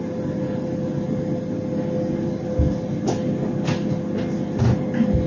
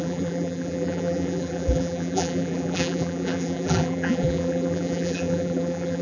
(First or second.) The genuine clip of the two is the first